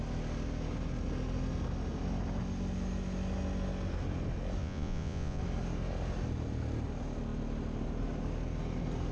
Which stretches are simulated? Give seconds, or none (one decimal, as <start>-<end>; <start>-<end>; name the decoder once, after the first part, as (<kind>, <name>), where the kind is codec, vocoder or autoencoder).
4.6-5.4 (vocoder, Vocos)

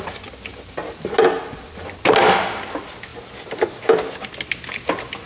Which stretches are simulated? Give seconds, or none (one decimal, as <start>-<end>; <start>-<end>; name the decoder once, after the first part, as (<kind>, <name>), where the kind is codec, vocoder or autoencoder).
none

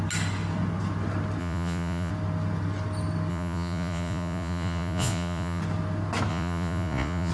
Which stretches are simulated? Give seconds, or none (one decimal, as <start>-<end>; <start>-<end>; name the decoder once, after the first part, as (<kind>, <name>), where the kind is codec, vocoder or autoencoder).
1.4-2.1 (vocoder, Vocos); 3.3-5.6; 6.3-7.3